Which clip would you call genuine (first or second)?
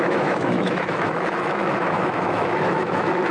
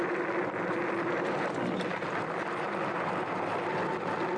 second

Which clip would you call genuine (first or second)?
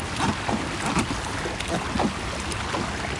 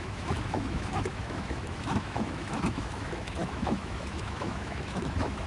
first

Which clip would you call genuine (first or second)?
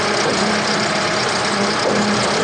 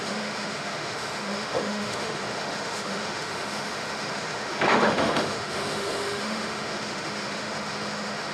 first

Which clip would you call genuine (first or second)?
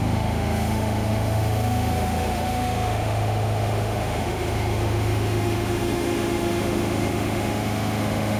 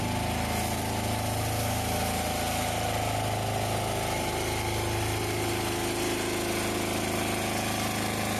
second